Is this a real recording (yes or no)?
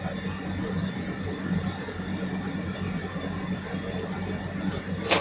yes